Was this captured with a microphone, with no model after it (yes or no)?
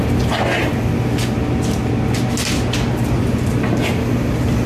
yes